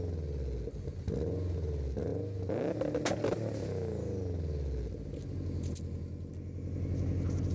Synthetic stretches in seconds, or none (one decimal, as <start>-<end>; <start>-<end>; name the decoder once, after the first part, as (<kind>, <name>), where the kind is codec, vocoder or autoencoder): none